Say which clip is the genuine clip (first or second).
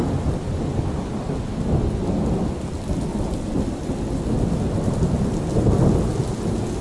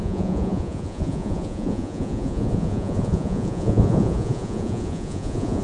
first